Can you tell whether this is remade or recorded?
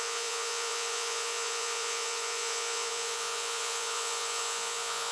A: remade